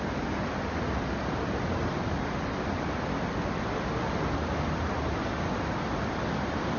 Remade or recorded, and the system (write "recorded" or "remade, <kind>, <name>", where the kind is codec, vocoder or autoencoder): recorded